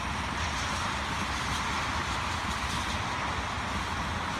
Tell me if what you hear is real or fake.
real